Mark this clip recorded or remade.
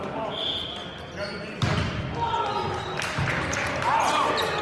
recorded